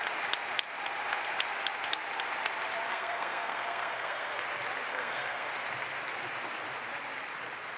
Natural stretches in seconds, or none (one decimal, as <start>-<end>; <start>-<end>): 0.0-2.9; 4.4-4.9; 5.5-7.8